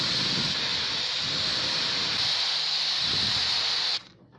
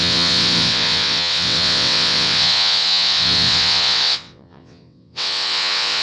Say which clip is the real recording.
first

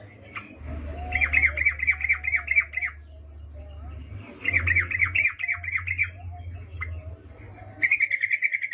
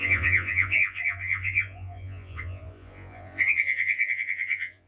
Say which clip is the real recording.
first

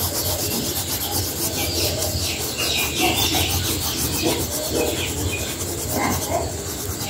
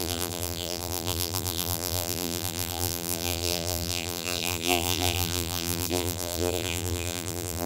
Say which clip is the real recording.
first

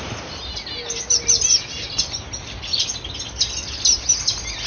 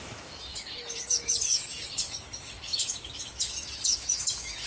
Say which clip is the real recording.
first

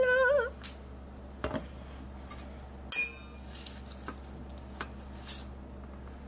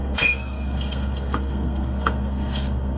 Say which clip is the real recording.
first